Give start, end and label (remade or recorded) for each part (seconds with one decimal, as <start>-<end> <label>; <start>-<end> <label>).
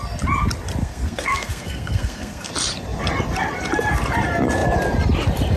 0.0-0.8 recorded; 0.8-2.5 remade; 2.5-5.6 recorded